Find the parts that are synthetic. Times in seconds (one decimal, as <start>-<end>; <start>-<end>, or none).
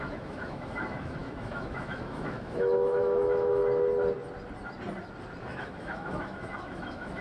0.0-3.6; 5.4-7.2